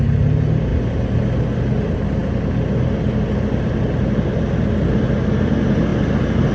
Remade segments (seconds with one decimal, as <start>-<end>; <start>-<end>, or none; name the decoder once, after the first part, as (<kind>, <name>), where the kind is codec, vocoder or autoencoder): none